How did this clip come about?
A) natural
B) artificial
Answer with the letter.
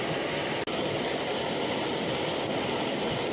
A